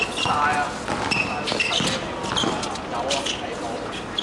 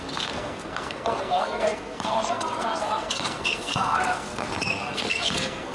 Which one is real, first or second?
first